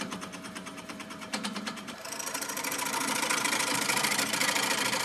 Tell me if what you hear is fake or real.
fake